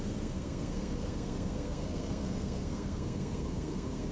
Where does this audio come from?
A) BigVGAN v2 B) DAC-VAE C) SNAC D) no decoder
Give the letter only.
C